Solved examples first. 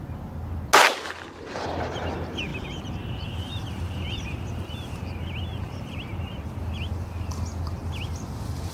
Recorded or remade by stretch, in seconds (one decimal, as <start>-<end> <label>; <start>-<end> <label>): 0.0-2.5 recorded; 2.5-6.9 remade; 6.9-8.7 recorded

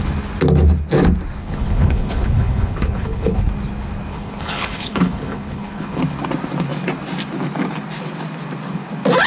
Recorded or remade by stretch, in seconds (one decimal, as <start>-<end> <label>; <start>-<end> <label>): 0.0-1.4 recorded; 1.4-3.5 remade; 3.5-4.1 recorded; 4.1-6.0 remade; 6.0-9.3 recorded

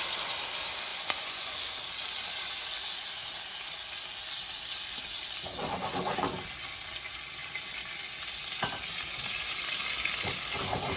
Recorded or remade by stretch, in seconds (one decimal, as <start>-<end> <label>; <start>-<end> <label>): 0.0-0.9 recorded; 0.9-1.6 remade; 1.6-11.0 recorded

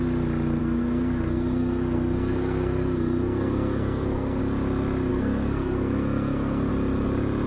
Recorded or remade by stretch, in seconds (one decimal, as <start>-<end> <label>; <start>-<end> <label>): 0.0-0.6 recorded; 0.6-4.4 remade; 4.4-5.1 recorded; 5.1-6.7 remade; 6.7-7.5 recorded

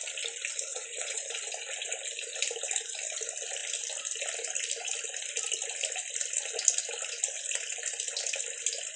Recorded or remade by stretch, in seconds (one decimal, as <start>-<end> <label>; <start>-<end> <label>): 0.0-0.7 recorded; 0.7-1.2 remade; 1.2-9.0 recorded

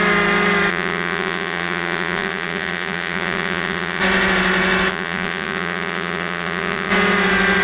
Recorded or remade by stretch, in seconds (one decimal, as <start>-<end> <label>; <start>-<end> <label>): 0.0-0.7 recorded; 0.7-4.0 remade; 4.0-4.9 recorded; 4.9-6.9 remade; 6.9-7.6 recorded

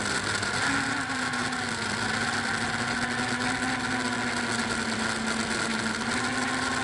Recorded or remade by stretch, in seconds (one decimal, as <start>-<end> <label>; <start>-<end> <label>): 0.0-6.8 recorded

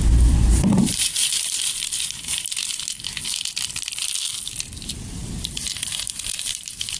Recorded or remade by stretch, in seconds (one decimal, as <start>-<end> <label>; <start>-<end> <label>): 0.0-1.3 remade; 1.3-5.5 recorded; 5.5-7.0 remade